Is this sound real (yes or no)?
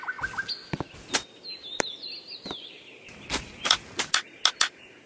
yes